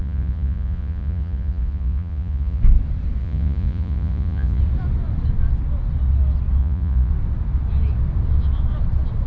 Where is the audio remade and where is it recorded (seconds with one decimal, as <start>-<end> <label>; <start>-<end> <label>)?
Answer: 0.0-2.6 remade; 2.6-3.2 recorded; 3.2-4.6 remade; 4.6-6.6 recorded; 6.6-7.1 remade; 7.1-9.3 recorded